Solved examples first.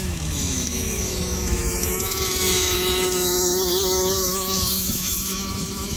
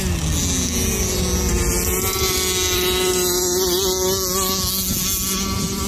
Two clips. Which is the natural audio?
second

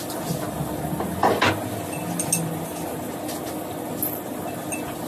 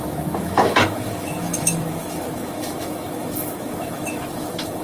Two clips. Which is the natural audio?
first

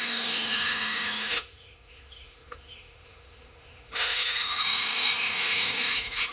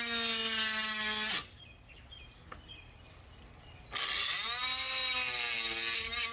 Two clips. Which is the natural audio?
second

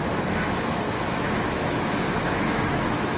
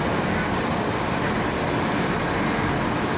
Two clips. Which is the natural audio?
second